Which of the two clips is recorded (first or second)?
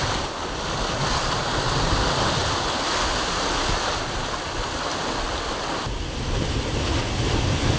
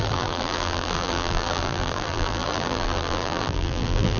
first